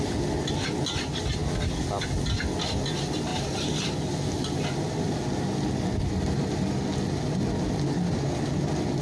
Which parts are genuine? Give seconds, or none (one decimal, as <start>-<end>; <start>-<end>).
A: 0.0-9.0